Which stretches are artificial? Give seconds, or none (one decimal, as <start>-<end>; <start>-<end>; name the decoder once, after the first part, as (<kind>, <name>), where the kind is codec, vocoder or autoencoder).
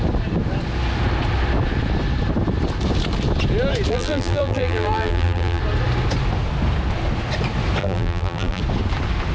3.9-5.6 (vocoder, BigVGAN v2); 7.8-8.6